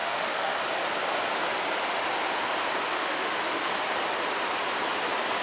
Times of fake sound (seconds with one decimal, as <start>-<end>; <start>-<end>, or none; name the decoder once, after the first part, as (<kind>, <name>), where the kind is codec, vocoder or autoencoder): 0.0-0.6 (autoencoder, DAC-VAE); 3.0-3.7